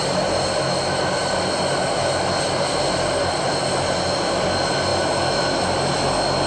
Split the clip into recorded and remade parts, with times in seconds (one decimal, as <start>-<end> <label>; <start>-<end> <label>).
0.0-6.5 recorded